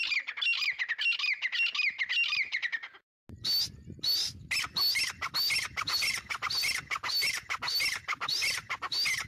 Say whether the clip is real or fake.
real